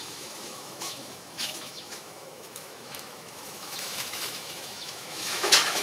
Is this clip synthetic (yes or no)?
yes